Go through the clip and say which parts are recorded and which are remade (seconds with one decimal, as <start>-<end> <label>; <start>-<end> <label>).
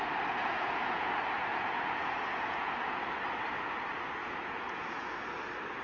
0.0-0.4 recorded; 0.4-1.1 remade; 1.1-1.5 recorded; 1.5-3.0 remade; 3.0-4.2 recorded; 4.2-5.2 remade; 5.2-5.8 recorded